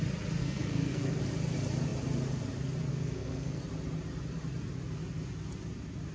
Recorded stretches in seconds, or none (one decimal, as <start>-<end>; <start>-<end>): 0.0-0.4; 1.2-2.9; 3.6-6.1